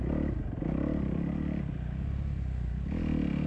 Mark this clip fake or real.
real